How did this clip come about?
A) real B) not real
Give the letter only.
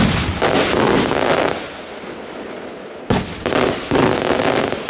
A